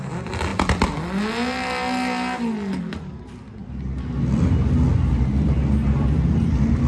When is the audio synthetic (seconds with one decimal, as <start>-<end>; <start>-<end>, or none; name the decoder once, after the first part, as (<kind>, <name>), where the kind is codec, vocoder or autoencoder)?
none